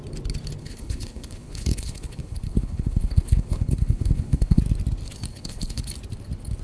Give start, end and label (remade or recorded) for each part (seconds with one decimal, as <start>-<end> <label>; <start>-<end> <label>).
0.0-0.6 recorded; 0.6-4.6 remade; 4.6-5.3 recorded; 5.3-5.9 remade; 5.9-6.6 recorded